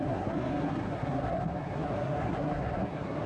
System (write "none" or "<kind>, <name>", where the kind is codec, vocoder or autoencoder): codec, SNAC